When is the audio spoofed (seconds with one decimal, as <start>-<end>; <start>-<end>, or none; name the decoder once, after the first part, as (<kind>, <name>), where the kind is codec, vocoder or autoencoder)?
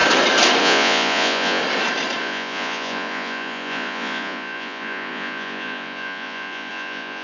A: 0.6-1.6 (vocoder, Vocos); 2.2-7.2